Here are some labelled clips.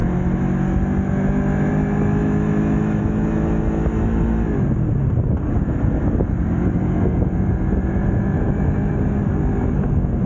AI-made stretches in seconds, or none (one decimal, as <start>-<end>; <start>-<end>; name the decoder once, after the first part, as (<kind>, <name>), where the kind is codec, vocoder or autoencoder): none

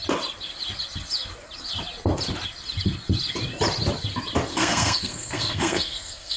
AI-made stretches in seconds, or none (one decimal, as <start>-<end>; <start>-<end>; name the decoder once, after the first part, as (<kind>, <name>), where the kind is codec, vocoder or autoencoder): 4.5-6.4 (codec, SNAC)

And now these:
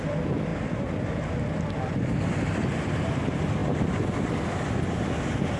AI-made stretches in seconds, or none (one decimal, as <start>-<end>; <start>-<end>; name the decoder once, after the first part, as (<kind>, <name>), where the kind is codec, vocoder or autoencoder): none